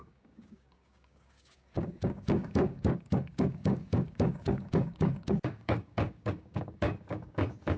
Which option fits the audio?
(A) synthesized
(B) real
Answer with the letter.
A